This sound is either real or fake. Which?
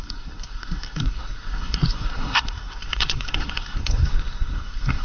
fake